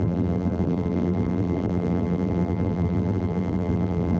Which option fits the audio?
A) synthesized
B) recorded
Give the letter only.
A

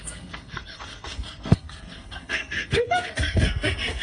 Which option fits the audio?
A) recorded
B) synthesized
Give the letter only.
B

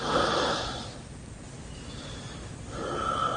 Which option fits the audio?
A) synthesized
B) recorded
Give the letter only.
B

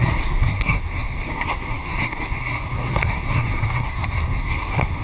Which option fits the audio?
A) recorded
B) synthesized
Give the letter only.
B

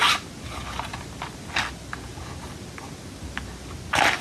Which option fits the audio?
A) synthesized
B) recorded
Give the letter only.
B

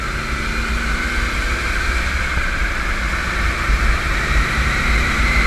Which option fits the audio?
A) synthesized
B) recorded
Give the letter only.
A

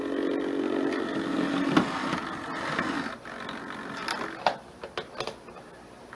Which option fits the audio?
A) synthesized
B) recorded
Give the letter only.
B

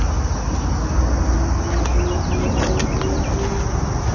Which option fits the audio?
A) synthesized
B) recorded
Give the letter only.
B